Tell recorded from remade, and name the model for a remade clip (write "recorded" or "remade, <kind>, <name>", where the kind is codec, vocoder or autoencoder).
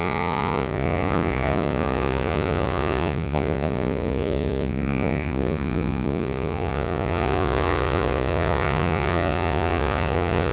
remade, vocoder, Vocos